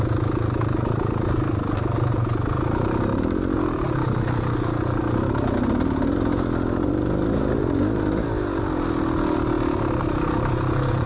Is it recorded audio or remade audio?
recorded